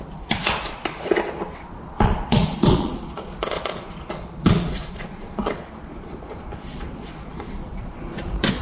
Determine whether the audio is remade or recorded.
remade